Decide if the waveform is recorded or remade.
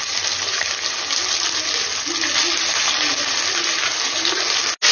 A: recorded